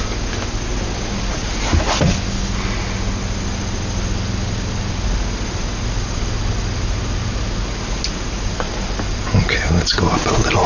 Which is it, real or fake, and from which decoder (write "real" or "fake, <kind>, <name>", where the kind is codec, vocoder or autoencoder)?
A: real